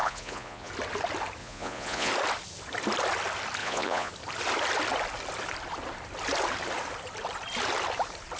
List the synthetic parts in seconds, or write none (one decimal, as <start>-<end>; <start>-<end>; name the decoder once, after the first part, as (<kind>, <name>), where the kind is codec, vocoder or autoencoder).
0.0-0.7 (vocoder, Vocos); 1.4-2.1; 3.6-4.1